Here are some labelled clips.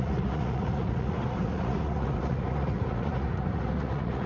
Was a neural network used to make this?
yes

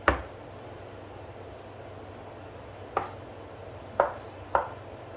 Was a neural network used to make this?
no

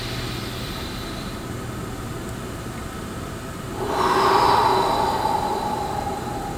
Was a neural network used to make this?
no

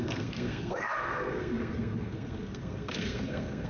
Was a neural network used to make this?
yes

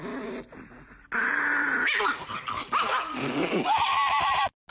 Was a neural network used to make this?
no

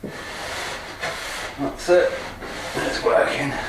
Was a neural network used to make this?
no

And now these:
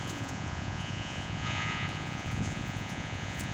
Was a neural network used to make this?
yes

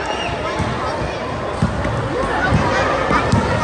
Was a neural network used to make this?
no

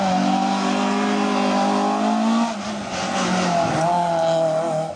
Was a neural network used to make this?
no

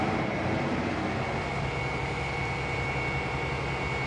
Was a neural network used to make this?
no